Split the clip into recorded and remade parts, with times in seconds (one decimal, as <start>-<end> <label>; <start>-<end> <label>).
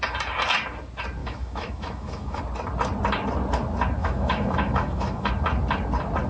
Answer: 0.0-1.2 recorded; 1.2-2.4 remade; 2.4-4.0 recorded; 4.0-5.3 remade; 5.3-6.3 recorded